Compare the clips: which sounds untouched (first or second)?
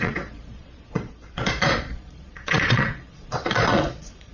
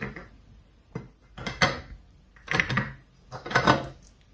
second